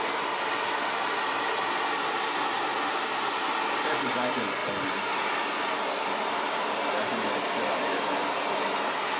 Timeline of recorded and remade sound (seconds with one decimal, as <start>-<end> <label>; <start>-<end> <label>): 0.0-9.2 recorded